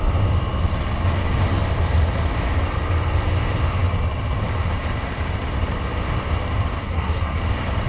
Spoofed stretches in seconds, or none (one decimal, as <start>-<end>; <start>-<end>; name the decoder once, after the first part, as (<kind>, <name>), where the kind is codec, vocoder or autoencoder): 6.8-7.4 (codec, SNAC)